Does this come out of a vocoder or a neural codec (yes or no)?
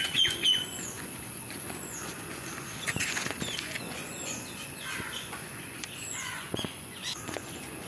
yes